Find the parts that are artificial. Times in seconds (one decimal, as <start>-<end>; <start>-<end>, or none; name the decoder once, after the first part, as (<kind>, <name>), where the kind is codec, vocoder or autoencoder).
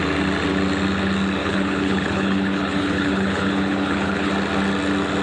1.4-4.3 (codec, HILCodec)